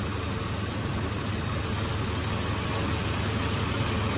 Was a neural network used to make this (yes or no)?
no